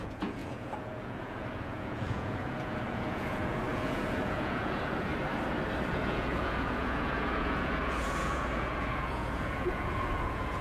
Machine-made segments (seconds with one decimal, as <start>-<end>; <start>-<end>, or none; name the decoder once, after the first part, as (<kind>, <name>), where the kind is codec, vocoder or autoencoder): 0.0-5.1 (vocoder, Vocos); 5.9-10.6